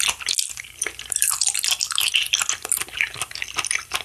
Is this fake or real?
real